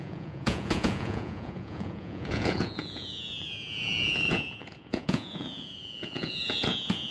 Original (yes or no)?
no